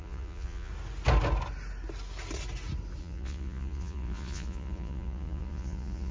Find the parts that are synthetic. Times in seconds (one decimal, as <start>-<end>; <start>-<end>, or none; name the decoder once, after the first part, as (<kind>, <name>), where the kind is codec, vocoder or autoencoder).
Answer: 0.0-0.7 (vocoder, Vocos); 3.0-6.1